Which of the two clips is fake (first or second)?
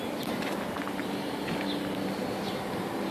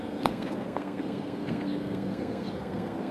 second